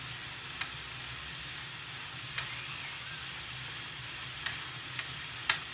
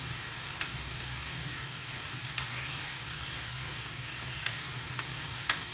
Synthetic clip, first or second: second